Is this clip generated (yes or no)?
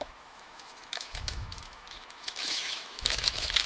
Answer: yes